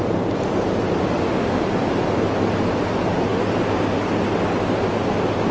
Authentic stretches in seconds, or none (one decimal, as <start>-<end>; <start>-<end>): 0.0-1.0; 1.6-5.5